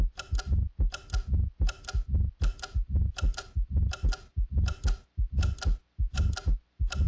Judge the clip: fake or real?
real